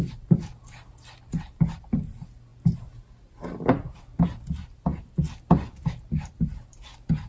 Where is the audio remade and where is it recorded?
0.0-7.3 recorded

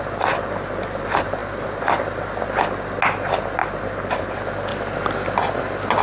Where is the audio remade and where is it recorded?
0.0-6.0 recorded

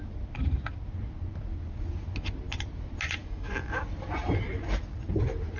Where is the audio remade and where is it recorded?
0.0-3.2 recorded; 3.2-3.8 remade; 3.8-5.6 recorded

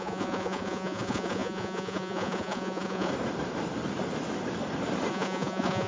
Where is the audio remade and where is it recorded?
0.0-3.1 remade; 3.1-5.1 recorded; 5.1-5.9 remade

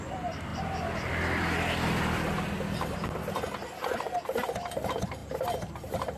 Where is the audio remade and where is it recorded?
0.0-0.5 recorded; 0.5-4.2 remade; 4.2-6.2 recorded

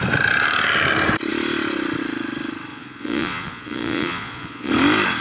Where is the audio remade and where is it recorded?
0.0-2.7 recorded; 2.7-4.7 remade; 4.7-5.2 recorded